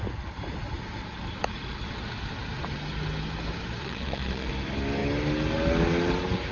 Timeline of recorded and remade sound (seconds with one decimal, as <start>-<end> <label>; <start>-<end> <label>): 0.0-3.8 recorded; 3.8-4.5 remade; 4.5-6.5 recorded